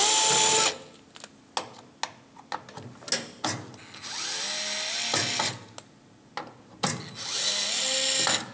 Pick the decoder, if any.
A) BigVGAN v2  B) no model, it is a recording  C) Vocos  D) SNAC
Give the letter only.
B